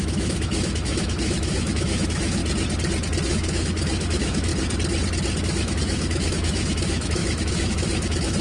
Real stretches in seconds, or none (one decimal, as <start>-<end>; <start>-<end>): 2.4-3.3; 4.5-5.4